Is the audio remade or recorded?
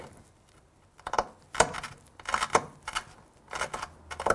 recorded